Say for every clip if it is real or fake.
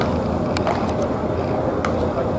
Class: real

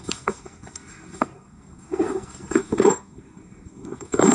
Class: fake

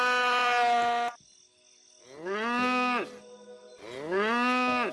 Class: real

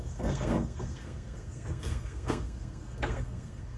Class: fake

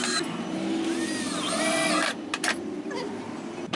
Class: real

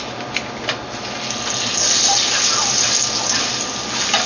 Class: real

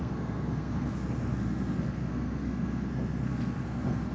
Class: fake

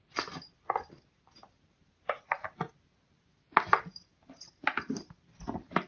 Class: real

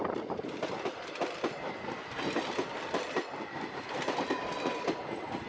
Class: real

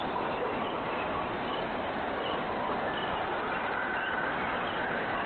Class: real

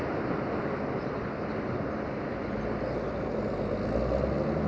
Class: real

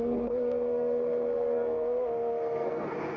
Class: fake